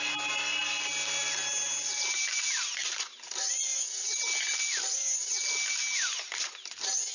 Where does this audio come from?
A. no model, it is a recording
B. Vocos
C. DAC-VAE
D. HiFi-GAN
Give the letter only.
A